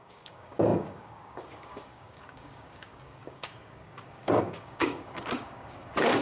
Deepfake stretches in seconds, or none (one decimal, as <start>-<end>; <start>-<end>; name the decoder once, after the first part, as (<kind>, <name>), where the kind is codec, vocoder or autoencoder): 0.0-6.2 (codec, DAC)